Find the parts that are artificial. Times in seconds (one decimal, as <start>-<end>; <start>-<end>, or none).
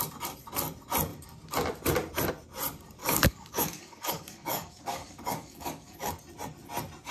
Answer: 3.0-6.1